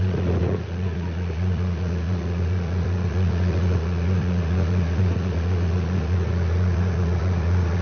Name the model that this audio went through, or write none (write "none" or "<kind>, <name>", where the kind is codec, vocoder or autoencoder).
vocoder, Vocos